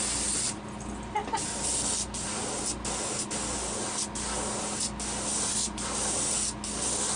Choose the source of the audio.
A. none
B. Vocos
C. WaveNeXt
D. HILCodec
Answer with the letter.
A